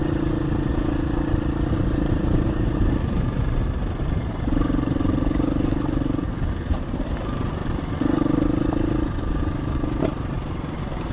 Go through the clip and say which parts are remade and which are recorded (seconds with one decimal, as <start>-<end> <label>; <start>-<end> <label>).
0.0-0.7 remade; 0.7-1.7 recorded; 1.7-3.6 remade; 3.6-4.2 recorded; 4.2-7.6 remade; 7.6-9.3 recorded; 9.3-11.1 remade